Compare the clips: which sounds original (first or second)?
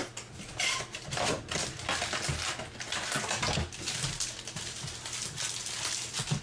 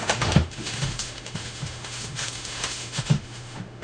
first